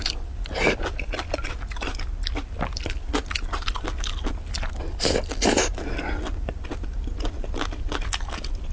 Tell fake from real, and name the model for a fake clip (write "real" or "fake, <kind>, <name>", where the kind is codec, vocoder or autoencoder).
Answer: real